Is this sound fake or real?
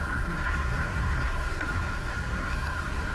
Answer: fake